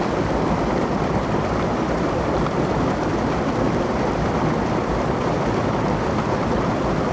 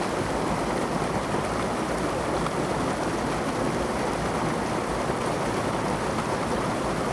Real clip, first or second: second